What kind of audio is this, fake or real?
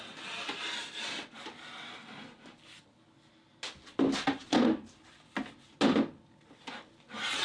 real